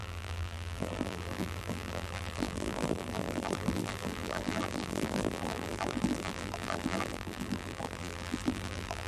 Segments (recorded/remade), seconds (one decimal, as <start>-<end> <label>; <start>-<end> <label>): 0.0-9.1 remade